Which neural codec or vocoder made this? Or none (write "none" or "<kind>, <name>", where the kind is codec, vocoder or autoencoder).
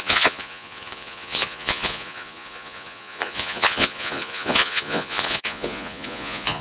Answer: vocoder, Vocos